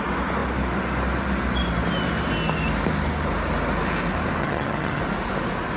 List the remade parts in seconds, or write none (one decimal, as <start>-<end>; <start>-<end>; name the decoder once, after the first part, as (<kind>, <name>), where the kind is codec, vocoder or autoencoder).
4.4-5.0 (vocoder, HiFi-GAN)